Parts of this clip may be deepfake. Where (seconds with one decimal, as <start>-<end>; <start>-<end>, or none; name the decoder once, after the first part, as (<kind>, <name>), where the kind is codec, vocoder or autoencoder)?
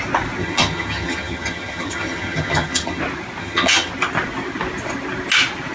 0.4-3.0 (vocoder, HiFi-GAN); 3.4-3.9